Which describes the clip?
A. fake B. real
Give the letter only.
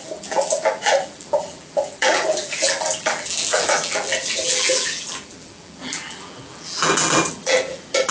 A